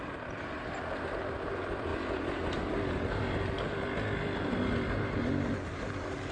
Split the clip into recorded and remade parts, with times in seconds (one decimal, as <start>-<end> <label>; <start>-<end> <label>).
0.0-6.3 recorded